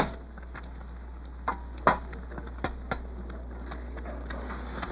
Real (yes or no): yes